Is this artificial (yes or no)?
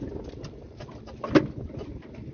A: no